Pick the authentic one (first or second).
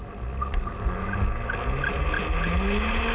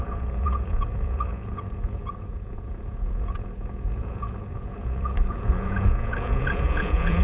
first